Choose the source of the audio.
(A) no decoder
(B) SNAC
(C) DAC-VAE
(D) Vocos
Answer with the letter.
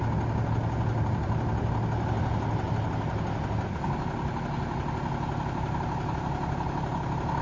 A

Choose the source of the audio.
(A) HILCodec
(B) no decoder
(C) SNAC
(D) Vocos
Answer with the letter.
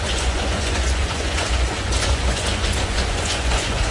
D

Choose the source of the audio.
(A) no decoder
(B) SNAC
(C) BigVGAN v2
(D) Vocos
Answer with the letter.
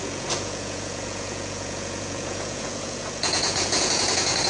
D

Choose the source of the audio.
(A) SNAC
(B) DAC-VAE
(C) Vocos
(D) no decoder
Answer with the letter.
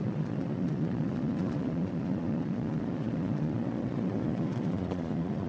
C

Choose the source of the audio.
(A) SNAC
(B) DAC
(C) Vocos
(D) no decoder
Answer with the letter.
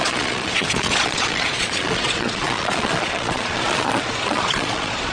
C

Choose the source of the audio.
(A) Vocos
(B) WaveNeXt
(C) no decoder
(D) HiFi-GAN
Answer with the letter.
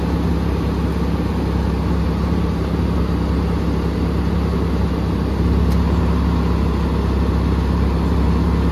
C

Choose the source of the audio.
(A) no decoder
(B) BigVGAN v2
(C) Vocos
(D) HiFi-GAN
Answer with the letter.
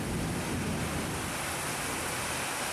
A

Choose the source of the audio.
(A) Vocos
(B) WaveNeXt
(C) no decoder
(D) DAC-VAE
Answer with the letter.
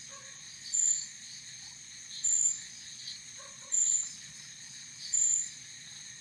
A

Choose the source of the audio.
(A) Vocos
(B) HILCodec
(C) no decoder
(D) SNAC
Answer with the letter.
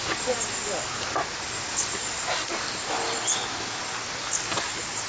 C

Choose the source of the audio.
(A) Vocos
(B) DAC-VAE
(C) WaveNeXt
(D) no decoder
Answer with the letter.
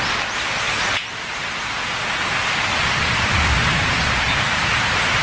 D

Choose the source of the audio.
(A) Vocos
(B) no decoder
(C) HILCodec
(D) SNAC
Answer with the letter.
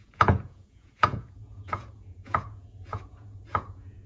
A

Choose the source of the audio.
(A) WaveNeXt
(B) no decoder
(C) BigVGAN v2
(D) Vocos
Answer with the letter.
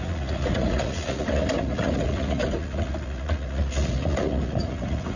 D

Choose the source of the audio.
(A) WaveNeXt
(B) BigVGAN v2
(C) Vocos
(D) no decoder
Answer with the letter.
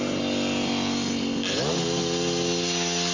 D